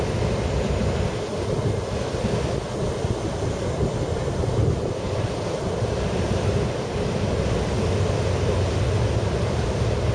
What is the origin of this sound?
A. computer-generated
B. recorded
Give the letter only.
B